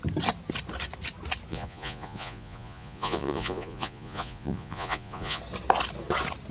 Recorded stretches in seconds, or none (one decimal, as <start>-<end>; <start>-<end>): 0.0-1.5; 5.4-6.5